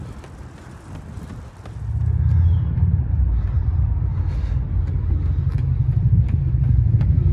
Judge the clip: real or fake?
real